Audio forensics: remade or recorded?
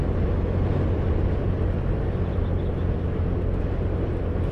recorded